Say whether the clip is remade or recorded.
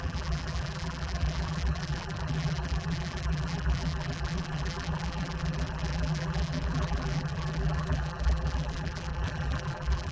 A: remade